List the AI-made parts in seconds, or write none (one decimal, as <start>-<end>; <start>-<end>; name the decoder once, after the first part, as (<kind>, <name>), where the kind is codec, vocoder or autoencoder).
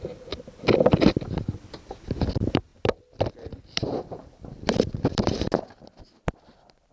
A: 0.0-2.7 (vocoder, BigVGAN v2); 3.3-6.9